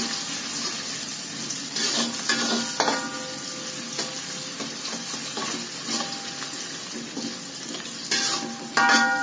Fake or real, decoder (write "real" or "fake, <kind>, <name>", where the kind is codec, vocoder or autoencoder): real